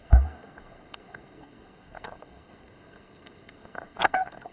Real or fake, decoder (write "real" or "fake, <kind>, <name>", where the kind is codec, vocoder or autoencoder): fake, codec, SNAC